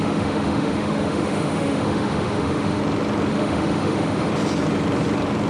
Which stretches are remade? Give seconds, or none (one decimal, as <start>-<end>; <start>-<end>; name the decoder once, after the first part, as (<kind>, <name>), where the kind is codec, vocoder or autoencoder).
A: 0.0-2.8 (autoencoder, DAC-VAE); 3.3-4.3